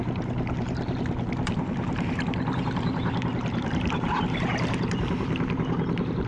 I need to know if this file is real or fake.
fake